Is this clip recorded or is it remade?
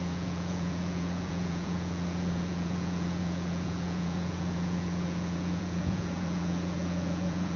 remade